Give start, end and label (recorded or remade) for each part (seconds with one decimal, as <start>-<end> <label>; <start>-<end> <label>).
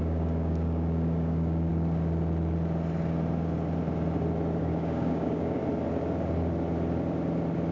0.0-1.7 remade; 1.7-4.6 recorded; 4.6-5.6 remade; 5.6-7.7 recorded